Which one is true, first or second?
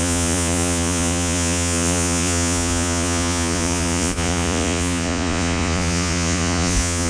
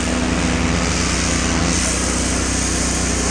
second